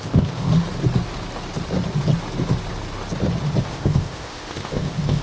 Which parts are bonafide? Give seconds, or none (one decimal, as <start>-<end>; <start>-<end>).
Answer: 0.5-3.6